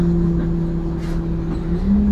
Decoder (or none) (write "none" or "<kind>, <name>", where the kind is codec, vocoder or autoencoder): none